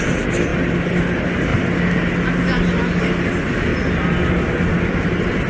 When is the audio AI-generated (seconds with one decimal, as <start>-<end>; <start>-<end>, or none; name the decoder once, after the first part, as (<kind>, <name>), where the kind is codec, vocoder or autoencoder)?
none